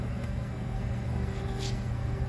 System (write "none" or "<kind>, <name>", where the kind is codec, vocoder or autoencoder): codec, SNAC